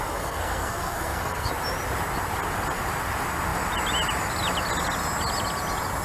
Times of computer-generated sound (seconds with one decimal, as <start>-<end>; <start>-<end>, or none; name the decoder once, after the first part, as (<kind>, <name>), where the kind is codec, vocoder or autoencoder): 0.0-1.5 (codec, SNAC)

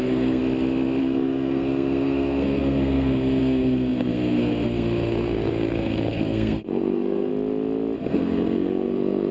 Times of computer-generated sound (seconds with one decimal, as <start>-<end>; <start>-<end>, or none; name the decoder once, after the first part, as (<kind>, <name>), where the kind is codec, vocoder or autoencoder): 0.0-0.4 (codec, SNAC); 1.0-7.3; 8.0-9.3

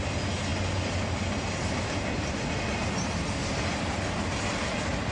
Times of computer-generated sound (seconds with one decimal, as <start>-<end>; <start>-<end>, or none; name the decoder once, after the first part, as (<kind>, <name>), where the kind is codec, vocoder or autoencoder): none

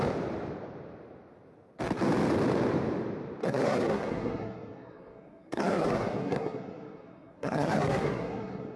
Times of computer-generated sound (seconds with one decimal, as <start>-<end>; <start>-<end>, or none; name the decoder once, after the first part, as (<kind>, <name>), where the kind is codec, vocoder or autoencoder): 3.4-8.8 (codec, SNAC)